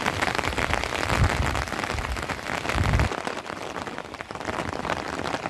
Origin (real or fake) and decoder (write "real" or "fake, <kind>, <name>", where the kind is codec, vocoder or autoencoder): real